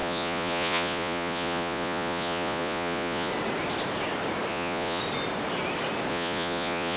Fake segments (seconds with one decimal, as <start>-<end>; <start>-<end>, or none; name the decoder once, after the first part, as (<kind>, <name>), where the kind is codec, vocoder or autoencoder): 0.0-3.3 (vocoder, Vocos); 4.5-5.0; 6.1-7.0